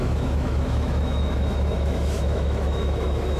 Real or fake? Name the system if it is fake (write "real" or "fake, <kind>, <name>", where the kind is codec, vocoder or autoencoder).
fake, autoencoder, DAC-VAE